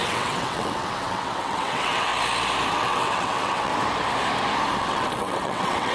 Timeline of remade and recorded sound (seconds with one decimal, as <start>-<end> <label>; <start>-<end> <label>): 0.0-2.1 remade; 2.1-2.7 recorded; 2.7-3.7 remade; 3.7-4.8 recorded; 4.8-5.9 remade